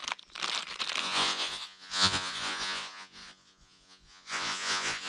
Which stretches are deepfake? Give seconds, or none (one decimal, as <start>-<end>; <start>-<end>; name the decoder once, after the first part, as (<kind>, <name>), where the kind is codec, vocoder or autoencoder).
1.0-5.1 (vocoder, Vocos)